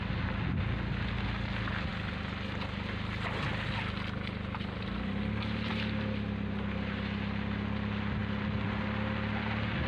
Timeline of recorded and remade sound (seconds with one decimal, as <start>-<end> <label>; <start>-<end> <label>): 0.0-9.9 recorded